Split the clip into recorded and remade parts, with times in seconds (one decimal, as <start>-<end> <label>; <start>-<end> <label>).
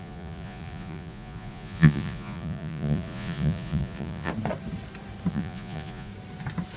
0.0-4.3 remade; 4.3-5.3 recorded; 5.3-6.1 remade; 6.1-6.8 recorded